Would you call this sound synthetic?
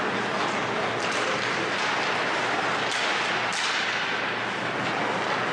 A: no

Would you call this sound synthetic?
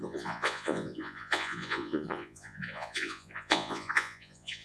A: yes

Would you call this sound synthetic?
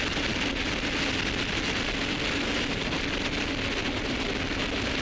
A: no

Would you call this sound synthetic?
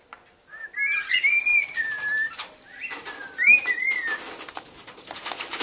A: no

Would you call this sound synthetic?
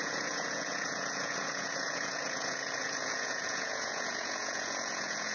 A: yes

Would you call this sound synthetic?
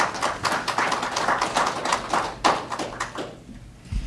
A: no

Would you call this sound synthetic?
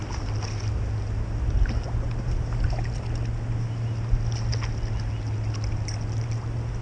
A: no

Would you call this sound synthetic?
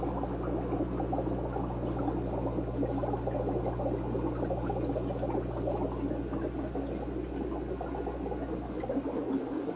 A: no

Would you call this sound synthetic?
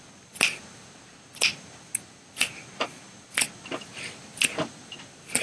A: no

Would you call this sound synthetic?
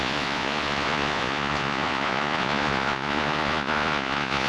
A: yes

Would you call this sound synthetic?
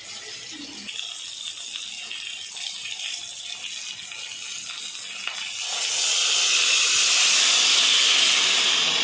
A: no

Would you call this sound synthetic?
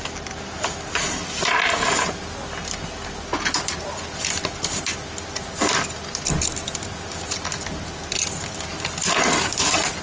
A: no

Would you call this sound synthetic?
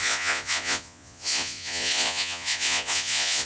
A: yes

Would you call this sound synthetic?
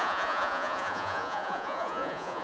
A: yes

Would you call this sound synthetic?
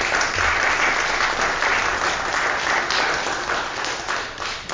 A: no